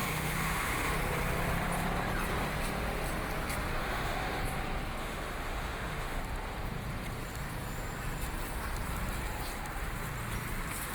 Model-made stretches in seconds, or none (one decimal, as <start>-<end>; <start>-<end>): 0.0-0.9; 3.8-4.4; 5.0-6.2